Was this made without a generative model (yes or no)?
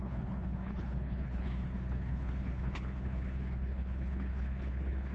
no